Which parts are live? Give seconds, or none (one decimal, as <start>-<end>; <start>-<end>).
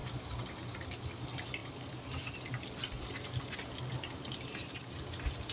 0.0-5.5